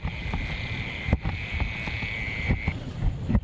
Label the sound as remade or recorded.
recorded